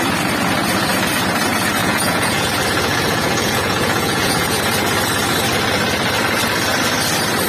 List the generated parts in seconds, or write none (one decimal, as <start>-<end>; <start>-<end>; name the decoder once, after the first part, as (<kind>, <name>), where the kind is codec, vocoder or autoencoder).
1.8-2.5 (vocoder, Vocos); 2.9-4.6